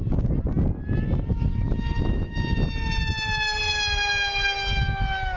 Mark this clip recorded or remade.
recorded